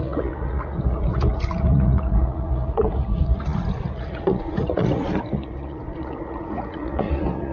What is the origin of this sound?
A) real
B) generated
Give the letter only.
B